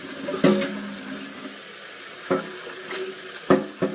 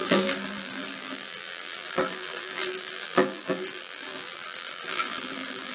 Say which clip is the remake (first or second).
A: second